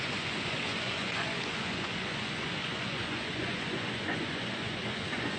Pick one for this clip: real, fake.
fake